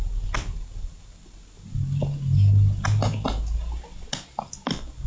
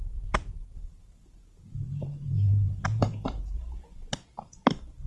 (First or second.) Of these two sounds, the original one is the first